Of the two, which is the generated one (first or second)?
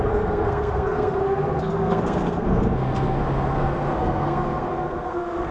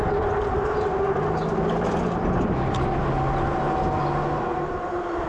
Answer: first